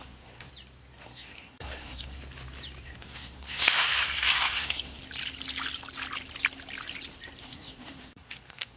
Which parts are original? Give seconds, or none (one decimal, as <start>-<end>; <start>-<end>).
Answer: 0.5-1.0; 2.2-2.8; 5.0-7.4